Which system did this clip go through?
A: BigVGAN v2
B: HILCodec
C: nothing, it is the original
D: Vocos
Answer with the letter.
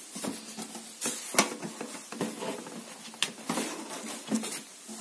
C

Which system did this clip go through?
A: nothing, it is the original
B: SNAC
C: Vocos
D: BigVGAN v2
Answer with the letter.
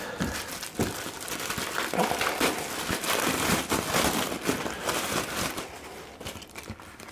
D